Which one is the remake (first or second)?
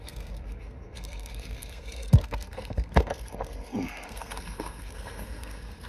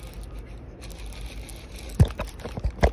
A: first